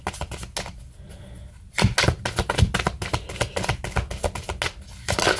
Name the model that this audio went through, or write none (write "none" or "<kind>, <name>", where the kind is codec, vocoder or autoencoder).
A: none